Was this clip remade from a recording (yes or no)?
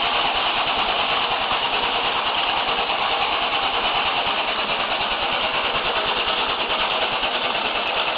no